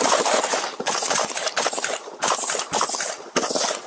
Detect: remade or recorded recorded